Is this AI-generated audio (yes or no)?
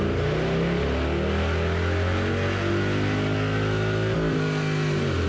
no